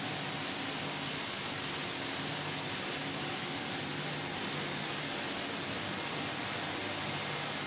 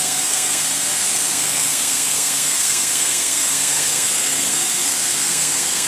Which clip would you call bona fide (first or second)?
first